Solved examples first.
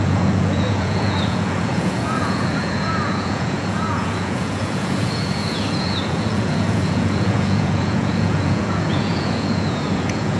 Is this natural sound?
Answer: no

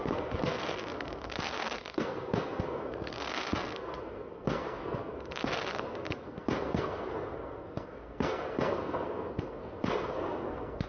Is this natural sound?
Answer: no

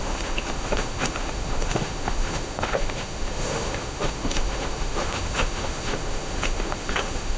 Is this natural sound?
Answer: no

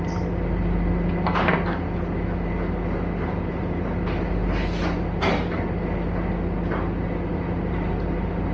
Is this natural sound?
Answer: yes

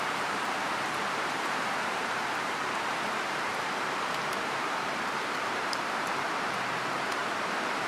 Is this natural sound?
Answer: no